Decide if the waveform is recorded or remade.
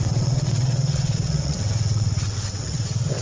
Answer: remade